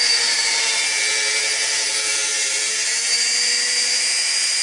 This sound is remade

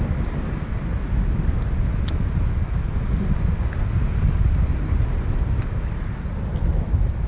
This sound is recorded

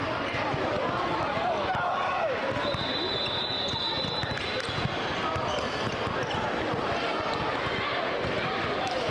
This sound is recorded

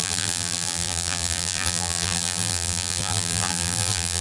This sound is remade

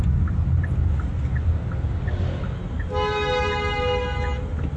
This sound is recorded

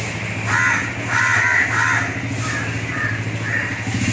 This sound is recorded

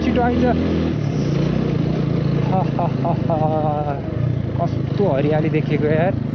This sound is recorded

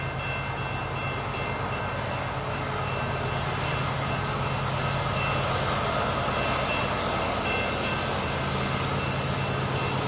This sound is recorded